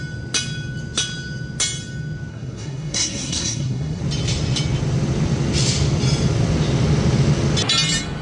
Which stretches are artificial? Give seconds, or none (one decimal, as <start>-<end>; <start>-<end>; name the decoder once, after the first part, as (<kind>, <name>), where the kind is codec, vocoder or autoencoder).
2.3-4.0 (codec, SNAC)